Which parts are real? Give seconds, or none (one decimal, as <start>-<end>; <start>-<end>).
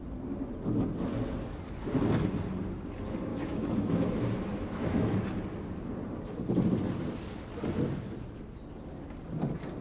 0.0-3.3; 5.2-9.8